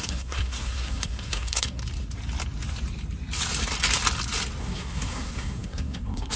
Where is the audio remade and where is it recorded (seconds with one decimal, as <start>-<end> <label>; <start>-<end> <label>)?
0.0-1.8 remade; 1.8-4.6 recorded; 4.6-6.4 remade

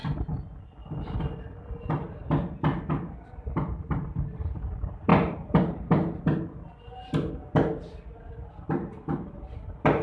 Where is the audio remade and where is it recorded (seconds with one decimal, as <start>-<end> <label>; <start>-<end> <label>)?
0.0-10.0 recorded

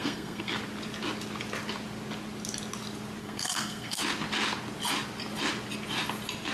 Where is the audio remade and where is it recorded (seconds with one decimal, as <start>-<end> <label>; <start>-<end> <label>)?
0.0-0.6 remade; 0.6-3.2 recorded; 3.2-4.0 remade; 4.0-6.5 recorded

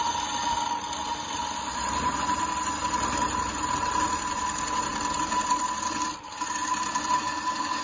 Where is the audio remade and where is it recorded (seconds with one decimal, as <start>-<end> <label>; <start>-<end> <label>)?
0.0-7.8 recorded

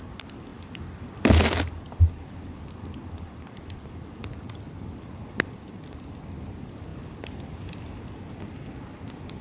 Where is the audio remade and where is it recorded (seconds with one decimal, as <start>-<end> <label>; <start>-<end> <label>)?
0.0-9.4 recorded

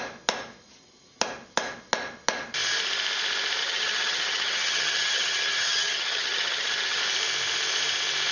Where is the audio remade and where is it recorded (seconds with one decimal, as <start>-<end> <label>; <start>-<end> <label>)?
0.0-3.6 recorded; 3.6-7.0 remade; 7.0-8.3 recorded

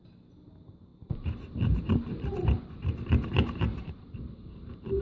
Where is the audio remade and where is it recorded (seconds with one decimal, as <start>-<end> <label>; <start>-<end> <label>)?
0.0-0.9 recorded; 0.9-3.9 remade; 3.9-5.0 recorded

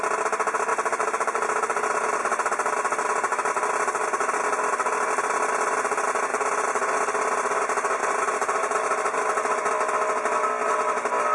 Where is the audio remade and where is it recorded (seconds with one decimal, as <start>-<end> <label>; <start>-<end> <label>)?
0.0-0.7 recorded; 0.7-2.2 remade; 2.2-6.3 recorded; 6.3-7.0 remade; 7.0-8.0 recorded; 8.0-9.7 remade; 9.7-11.3 recorded